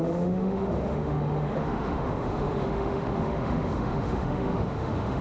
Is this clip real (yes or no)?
no